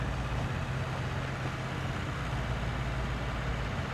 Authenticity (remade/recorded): recorded